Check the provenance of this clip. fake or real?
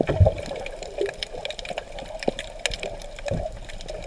real